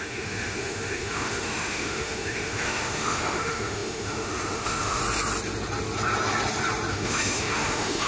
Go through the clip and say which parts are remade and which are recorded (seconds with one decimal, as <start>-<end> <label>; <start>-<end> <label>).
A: 0.0-5.0 remade; 5.0-6.9 recorded; 6.9-8.1 remade